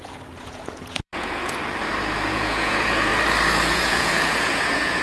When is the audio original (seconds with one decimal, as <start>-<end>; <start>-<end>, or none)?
1.6-2.3; 3.1-3.7